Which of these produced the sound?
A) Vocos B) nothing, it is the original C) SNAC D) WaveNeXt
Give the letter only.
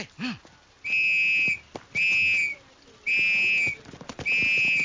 B